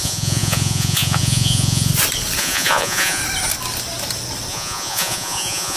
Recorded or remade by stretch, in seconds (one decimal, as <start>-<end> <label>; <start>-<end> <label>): 0.0-1.9 remade; 1.9-2.4 recorded; 2.4-3.2 remade; 3.2-4.5 recorded; 4.5-5.8 remade

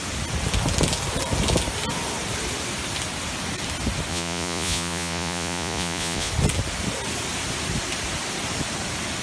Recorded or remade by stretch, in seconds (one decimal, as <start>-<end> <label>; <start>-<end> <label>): 0.0-4.1 recorded; 4.1-6.3 remade; 6.3-9.2 recorded

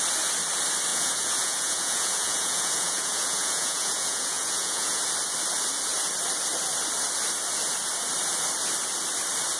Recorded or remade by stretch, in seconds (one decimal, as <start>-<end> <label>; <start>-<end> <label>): 0.0-0.9 recorded; 0.9-5.0 remade; 5.0-9.6 recorded

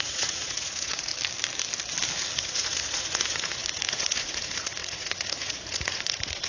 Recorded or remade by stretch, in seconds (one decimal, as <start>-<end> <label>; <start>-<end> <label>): 0.0-1.1 remade; 1.1-2.4 recorded; 2.4-6.5 remade

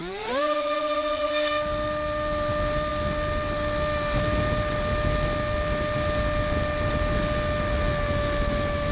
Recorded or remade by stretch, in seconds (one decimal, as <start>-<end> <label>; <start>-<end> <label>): 0.0-1.3 remade; 1.3-8.9 recorded